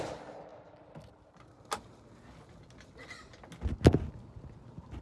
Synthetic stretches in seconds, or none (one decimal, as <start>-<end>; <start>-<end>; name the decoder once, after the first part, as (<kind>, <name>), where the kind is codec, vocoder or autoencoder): none